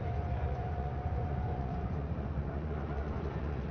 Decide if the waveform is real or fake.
fake